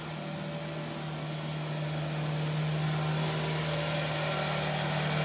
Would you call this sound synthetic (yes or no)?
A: no